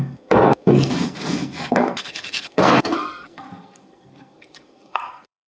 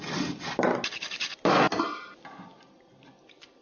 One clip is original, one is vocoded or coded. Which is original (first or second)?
second